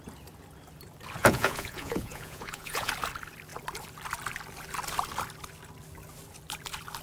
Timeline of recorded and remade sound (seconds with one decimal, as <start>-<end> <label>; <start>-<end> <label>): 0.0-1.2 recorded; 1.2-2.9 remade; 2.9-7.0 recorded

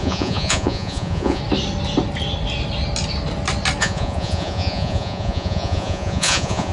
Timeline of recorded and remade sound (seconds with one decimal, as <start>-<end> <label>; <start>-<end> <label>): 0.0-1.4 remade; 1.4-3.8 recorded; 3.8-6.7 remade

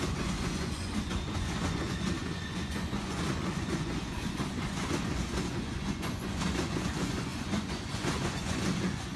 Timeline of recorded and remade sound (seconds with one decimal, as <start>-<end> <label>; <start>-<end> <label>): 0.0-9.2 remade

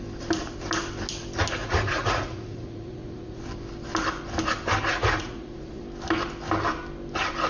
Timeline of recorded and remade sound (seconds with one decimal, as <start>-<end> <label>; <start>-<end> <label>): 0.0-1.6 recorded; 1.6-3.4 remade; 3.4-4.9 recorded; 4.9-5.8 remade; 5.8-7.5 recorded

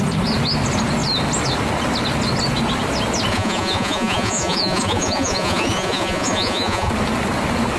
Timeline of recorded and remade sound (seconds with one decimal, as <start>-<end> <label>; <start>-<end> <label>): 0.0-3.3 recorded; 3.3-6.9 remade; 6.9-7.8 recorded

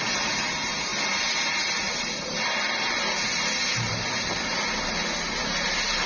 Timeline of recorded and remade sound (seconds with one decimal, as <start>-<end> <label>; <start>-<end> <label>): 0.0-6.1 recorded